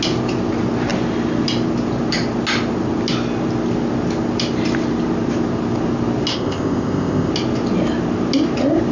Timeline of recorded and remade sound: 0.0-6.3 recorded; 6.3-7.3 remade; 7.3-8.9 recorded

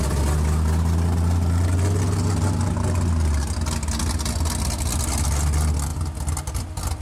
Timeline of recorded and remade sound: 0.0-7.0 recorded

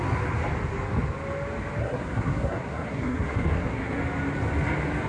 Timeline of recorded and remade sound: 0.0-1.8 recorded; 1.8-4.0 remade; 4.0-5.1 recorded

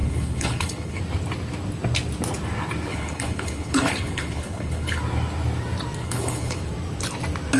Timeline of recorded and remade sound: 0.0-1.0 remade; 1.0-2.9 recorded; 2.9-5.0 remade; 5.0-6.0 recorded; 6.0-6.6 remade; 6.6-7.6 recorded

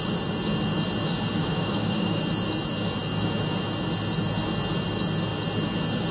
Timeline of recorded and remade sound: 0.0-1.4 recorded; 1.4-2.2 remade; 2.2-6.1 recorded

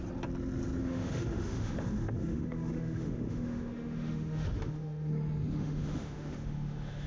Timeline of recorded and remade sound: 0.0-0.8 recorded; 0.8-5.1 remade; 5.1-5.6 recorded; 5.6-7.1 remade

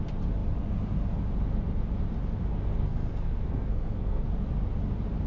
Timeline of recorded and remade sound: 0.0-2.5 recorded; 2.5-4.3 remade; 4.3-5.3 recorded